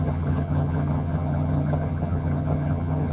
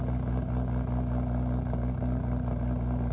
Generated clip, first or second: first